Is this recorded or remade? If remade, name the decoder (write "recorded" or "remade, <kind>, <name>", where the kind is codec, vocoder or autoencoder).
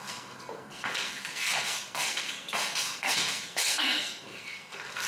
remade, codec, SNAC